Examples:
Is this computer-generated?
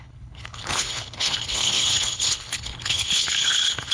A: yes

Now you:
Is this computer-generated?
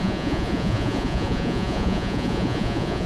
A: yes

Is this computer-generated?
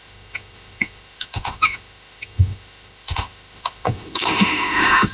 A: yes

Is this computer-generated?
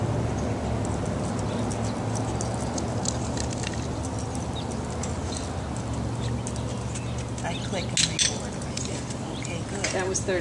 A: no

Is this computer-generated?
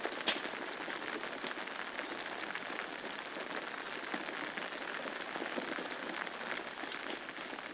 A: no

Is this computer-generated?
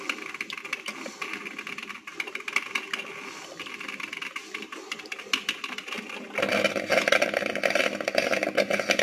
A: no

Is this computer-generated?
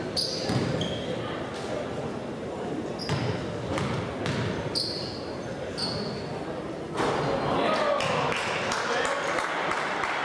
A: no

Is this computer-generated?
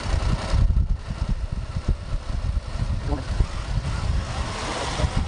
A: no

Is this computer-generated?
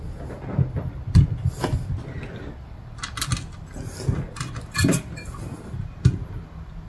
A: no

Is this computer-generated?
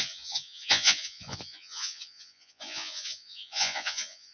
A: yes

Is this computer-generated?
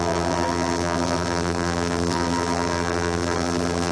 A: yes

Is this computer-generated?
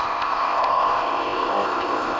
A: yes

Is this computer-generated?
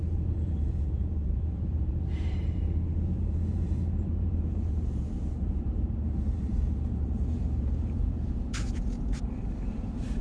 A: yes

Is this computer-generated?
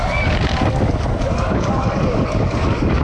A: yes